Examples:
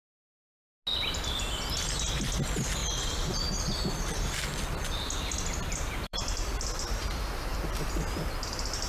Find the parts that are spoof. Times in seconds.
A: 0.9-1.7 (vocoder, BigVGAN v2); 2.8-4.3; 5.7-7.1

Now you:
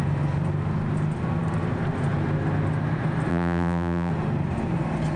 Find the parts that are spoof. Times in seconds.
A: 3.3-4.1 (vocoder, BigVGAN v2)